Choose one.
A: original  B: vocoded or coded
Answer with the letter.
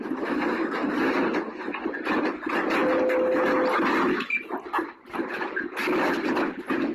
A